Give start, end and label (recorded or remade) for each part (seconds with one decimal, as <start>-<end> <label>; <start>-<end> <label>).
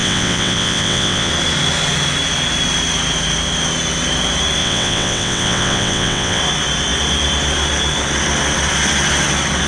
0.0-1.3 remade; 1.3-4.6 recorded; 4.6-6.4 remade; 6.4-9.7 recorded